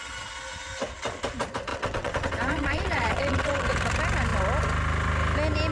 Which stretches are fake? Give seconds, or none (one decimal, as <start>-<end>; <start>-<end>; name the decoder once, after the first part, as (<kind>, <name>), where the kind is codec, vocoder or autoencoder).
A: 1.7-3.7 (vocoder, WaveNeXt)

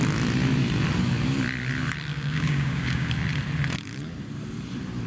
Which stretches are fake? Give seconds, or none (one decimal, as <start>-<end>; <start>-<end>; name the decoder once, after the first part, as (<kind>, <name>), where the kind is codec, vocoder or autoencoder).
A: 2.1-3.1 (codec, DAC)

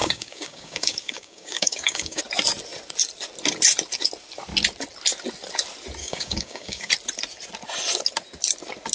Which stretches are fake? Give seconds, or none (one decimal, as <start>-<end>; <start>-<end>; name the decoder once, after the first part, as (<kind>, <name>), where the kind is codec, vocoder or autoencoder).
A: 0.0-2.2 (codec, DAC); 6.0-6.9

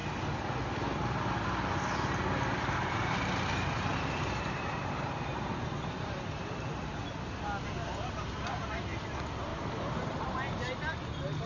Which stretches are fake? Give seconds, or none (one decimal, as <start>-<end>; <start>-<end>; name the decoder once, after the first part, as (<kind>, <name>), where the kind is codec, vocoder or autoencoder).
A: 3.9-7.0 (vocoder, BigVGAN v2); 9.5-10.2

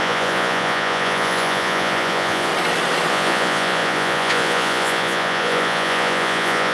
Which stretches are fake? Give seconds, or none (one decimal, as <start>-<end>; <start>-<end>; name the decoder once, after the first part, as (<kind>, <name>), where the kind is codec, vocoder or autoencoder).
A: 0.0-2.5 (vocoder, Vocos); 3.1-6.7

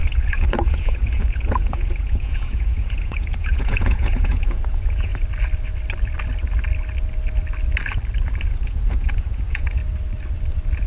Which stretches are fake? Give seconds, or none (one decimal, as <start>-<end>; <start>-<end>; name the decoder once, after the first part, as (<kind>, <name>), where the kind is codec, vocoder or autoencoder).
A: 0.0-5.1 (vocoder, Vocos); 8.5-9.8